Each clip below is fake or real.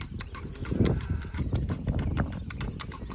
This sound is fake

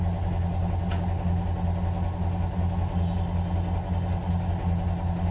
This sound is real